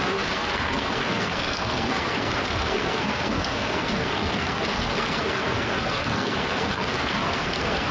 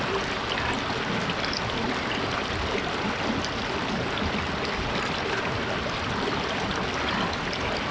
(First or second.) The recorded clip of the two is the second